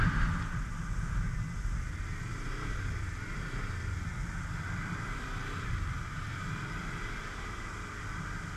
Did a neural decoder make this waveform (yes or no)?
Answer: no